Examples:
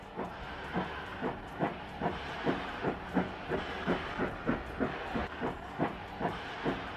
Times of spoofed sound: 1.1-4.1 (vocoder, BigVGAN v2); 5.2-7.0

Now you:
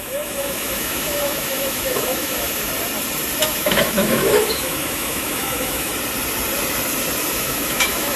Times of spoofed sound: 0.0-2.7 (autoencoder, DAC-VAE); 3.4-5.9; 7.3-8.2

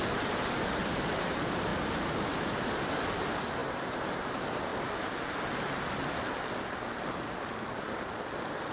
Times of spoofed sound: 0.0-1.7 (vocoder, BigVGAN v2); 2.4-4.7

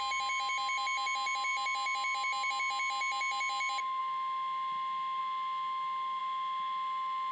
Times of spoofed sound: none

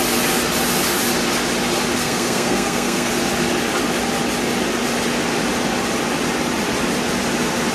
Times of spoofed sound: 2.0-3.1 (codec, SNAC)

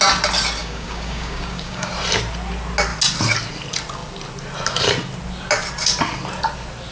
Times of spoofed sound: 0.6-1.9 (codec, DAC)

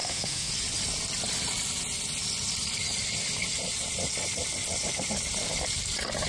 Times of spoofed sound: 0.0-0.5 (autoencoder, DAC-VAE)

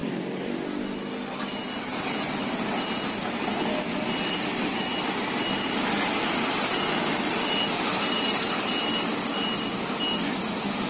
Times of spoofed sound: none